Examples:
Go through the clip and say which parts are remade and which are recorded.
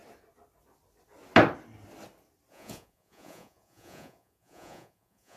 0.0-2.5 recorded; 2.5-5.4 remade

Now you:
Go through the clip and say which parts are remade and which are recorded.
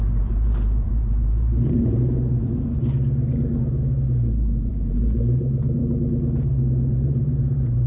0.0-2.8 remade; 2.8-4.7 recorded; 4.7-5.8 remade; 5.8-6.9 recorded; 6.9-7.9 remade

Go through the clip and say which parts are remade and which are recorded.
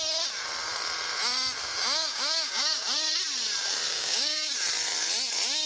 0.0-1.6 recorded; 1.6-2.8 remade; 2.8-3.9 recorded; 3.9-4.5 remade; 4.5-5.7 recorded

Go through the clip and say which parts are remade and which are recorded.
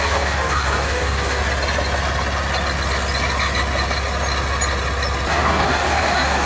0.0-1.4 remade; 1.4-5.3 recorded; 5.3-6.5 remade